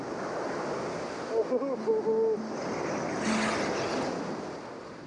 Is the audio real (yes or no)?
yes